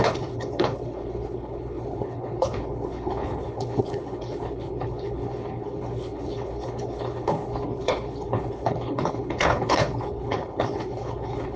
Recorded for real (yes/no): no